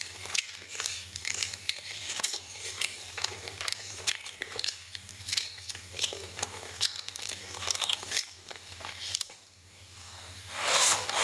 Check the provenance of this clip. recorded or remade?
remade